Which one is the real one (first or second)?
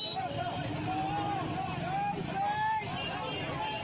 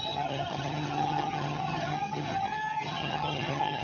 first